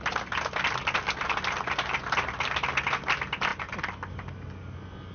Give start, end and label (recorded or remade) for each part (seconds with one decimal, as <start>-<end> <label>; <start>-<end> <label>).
0.0-5.1 recorded